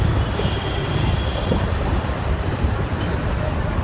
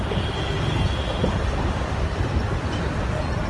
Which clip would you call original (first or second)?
second